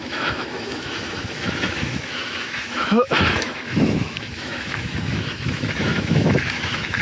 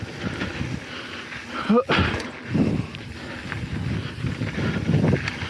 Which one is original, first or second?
second